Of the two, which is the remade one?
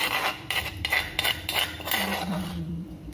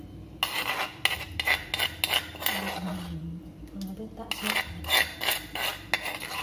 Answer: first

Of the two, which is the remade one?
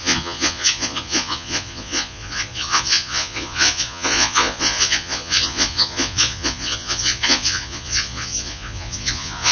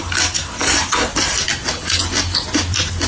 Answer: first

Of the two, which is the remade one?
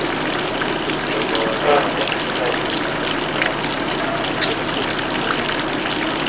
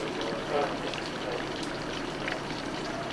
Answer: second